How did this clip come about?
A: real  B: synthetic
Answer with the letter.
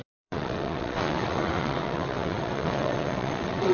B